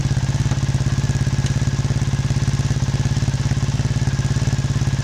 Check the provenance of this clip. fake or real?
real